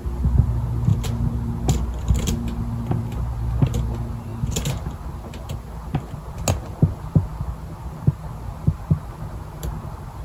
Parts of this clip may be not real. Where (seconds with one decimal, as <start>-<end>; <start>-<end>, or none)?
none